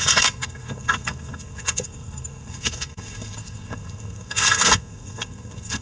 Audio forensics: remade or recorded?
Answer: remade